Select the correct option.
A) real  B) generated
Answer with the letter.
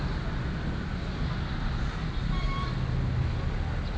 A